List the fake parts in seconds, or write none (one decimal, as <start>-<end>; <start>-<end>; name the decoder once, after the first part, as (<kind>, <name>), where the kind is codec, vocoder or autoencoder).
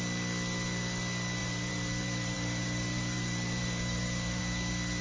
1.4-4.4 (vocoder, BigVGAN v2)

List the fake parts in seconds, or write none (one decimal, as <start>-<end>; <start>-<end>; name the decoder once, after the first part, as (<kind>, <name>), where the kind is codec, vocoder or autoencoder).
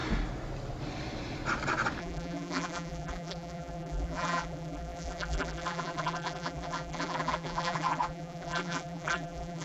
2.0-9.6 (vocoder, BigVGAN v2)